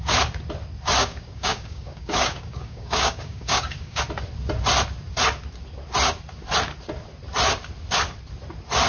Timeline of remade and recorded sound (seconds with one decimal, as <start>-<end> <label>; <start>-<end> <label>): 0.0-1.0 recorded; 1.0-4.0 remade; 4.0-8.9 recorded